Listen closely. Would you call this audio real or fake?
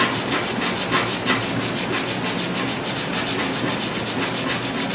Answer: real